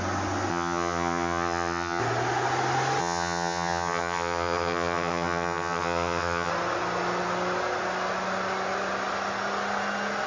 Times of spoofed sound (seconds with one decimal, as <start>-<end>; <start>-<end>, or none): 0.5-2.0; 3.0-6.5